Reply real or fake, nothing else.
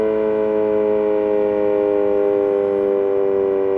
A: real